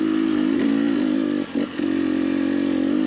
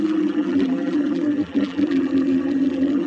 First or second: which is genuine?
first